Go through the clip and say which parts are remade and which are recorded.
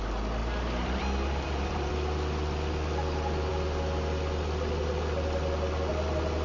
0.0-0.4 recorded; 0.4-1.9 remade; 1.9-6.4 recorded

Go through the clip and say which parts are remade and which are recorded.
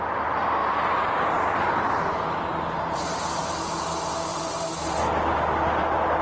0.0-0.6 recorded; 0.6-1.2 remade; 1.2-4.3 recorded; 4.3-5.0 remade; 5.0-6.2 recorded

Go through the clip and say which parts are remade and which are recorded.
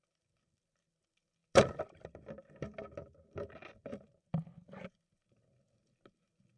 0.0-6.6 recorded